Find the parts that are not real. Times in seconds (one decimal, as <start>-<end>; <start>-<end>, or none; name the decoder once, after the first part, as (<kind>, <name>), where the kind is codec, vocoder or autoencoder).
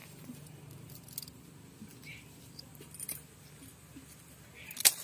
0.0-0.6 (vocoder, BigVGAN v2)